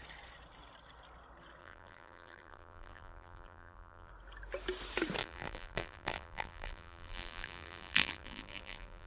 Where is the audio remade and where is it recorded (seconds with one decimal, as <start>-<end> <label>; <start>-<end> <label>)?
0.0-1.6 recorded; 1.6-4.1 remade; 4.1-5.2 recorded; 5.2-9.1 remade